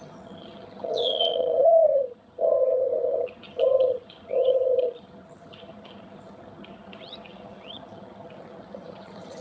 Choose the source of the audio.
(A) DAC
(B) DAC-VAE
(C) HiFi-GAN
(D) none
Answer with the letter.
C